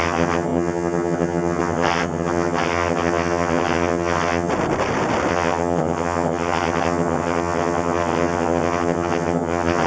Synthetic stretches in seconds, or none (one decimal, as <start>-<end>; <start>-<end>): 0.0-4.5; 5.3-9.9